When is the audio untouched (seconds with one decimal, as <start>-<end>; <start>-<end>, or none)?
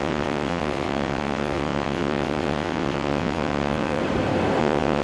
4.0-4.6